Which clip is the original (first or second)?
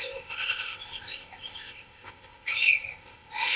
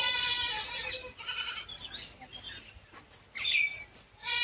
second